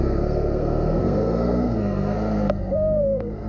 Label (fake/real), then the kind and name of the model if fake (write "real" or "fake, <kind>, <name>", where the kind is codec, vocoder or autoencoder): fake, codec, SNAC